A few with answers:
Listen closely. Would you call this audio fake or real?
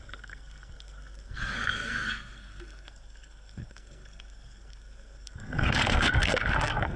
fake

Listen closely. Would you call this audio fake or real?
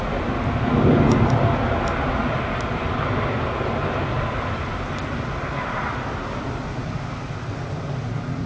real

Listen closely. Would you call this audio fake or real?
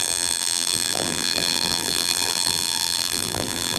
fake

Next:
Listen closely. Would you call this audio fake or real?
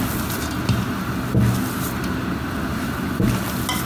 real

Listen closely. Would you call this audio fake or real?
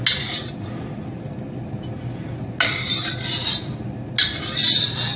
real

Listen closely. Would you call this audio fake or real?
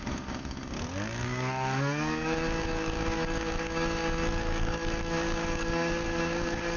fake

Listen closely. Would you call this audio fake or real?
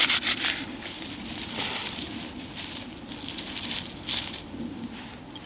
real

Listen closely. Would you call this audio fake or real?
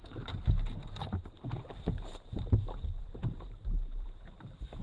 fake